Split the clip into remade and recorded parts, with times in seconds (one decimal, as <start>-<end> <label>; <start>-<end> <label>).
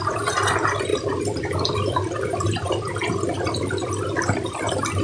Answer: 0.0-5.0 recorded